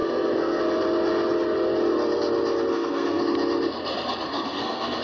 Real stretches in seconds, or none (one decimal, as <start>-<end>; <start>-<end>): 0.6-2.7; 3.2-4.3